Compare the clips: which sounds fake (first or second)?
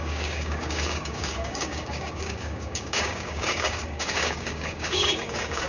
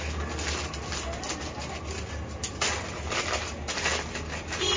first